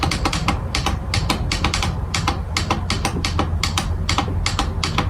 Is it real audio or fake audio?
real